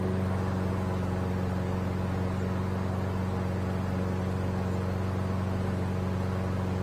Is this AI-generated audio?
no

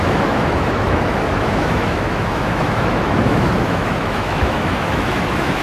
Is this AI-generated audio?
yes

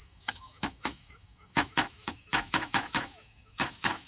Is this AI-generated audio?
yes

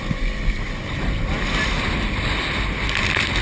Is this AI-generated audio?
no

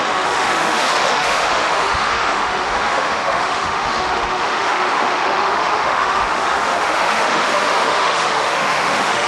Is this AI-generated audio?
yes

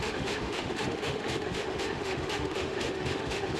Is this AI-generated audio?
yes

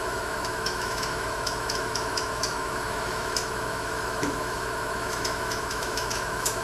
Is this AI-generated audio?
yes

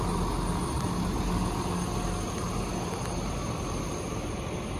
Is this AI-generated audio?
no